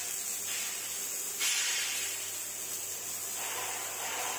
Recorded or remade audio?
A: recorded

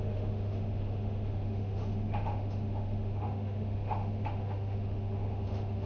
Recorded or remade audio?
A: remade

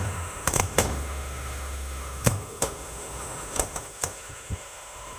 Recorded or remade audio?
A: remade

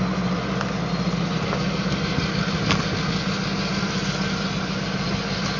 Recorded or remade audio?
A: recorded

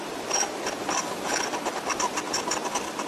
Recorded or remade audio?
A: recorded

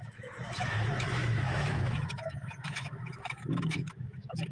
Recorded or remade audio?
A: remade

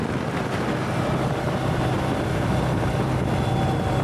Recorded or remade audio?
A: recorded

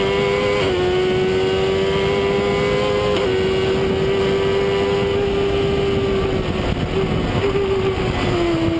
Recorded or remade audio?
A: recorded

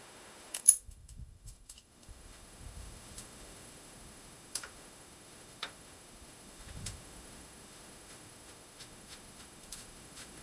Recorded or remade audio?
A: remade